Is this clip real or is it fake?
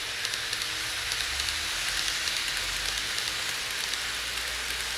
real